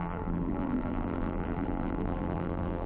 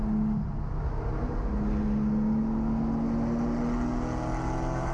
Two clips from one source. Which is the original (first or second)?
second